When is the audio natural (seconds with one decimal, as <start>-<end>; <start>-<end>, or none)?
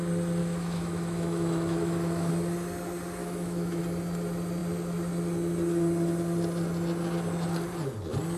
0.0-0.4; 2.3-3.2; 3.8-8.4